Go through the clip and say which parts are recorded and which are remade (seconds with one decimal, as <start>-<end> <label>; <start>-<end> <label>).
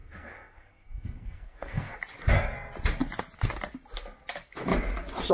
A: 0.0-2.0 remade; 2.0-5.3 recorded